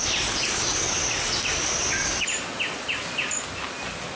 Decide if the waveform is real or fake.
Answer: real